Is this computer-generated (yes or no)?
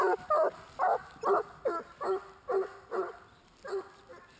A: no